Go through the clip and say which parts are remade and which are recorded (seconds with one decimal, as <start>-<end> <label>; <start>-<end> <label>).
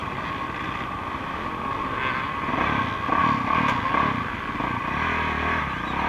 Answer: 0.0-6.1 recorded